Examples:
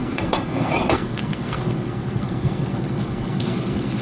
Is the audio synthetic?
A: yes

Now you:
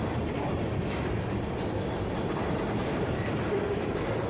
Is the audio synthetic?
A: no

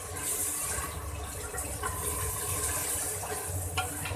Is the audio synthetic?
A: no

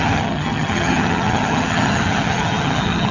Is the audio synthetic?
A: yes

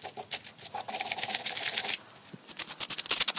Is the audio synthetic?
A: no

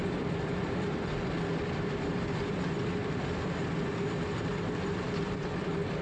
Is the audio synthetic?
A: yes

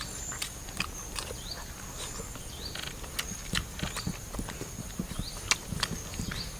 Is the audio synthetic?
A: no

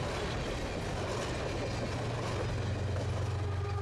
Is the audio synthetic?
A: no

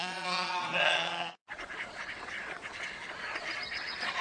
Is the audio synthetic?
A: yes